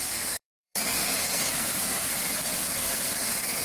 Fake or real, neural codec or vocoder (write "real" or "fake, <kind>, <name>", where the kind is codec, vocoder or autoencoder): fake, codec, SNAC